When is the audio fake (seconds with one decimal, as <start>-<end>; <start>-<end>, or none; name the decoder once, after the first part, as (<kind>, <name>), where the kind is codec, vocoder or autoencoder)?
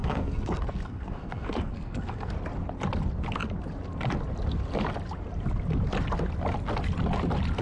0.0-2.3 (codec, SNAC)